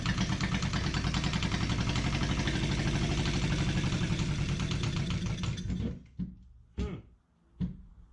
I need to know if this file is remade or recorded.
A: recorded